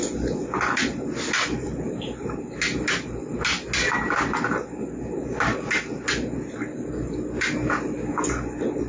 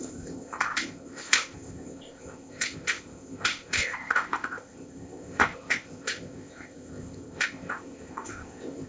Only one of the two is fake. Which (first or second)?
second